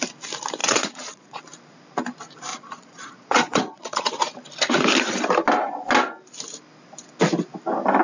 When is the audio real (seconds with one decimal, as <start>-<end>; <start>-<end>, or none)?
0.0-0.6; 1.4-2.5; 4.0-8.0